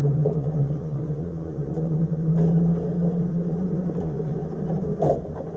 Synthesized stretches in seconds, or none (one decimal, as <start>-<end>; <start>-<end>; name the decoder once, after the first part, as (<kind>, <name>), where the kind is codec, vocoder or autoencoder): 0.0-2.3 (vocoder, Vocos); 3.3-4.4